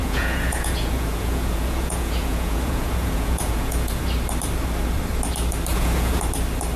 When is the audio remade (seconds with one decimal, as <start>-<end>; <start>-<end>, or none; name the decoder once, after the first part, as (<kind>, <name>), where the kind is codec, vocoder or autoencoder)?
0.0-4.0 (vocoder, Vocos); 5.7-6.2